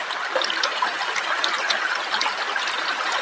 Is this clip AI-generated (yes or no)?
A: no